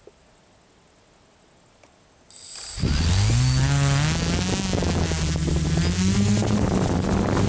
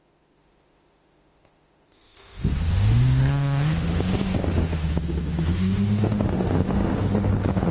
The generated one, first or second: second